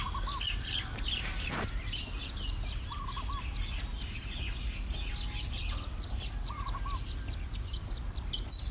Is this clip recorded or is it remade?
recorded